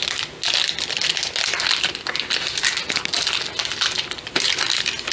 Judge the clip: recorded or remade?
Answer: recorded